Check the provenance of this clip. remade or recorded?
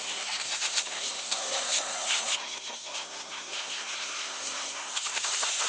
remade